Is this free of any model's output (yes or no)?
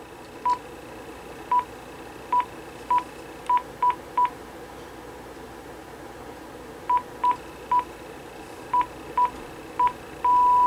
yes